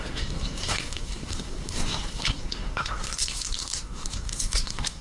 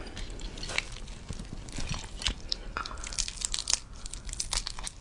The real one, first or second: second